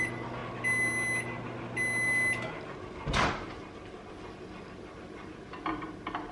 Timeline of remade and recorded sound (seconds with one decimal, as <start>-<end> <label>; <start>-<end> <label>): 0.0-0.4 remade; 0.4-4.1 recorded; 4.1-6.3 remade